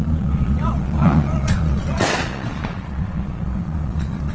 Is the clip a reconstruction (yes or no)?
yes